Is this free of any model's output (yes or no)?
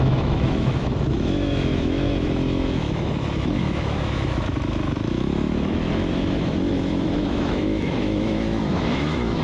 no